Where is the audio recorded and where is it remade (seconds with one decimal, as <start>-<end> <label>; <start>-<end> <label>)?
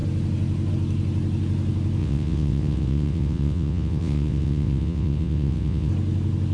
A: 0.0-2.0 recorded; 2.0-5.9 remade; 5.9-6.5 recorded